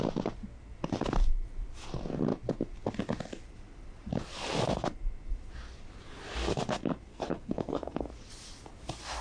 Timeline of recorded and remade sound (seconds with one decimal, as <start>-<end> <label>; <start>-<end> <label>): 0.0-7.1 recorded; 7.1-8.0 remade; 8.0-9.2 recorded